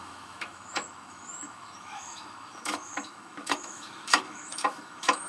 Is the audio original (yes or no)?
no